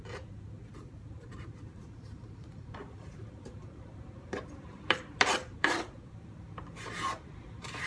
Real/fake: fake